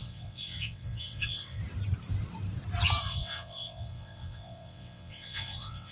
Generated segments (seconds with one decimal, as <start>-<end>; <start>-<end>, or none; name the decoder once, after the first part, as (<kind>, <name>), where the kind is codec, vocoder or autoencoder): 0.0-1.6 (vocoder, WaveNeXt); 3.0-5.9